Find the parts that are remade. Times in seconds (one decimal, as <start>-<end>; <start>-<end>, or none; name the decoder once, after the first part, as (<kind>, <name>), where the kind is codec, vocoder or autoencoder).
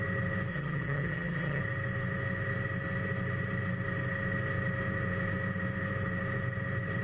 0.5-1.6 (vocoder, HiFi-GAN)